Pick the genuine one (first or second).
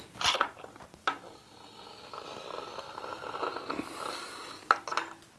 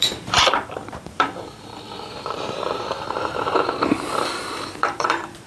first